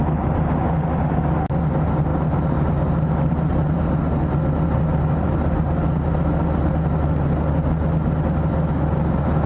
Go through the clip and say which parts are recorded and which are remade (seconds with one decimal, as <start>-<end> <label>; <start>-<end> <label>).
0.0-9.5 recorded